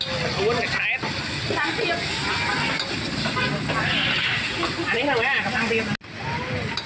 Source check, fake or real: real